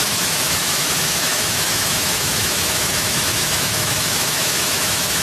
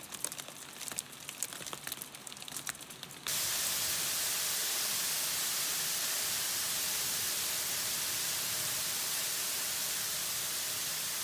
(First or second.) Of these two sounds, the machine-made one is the first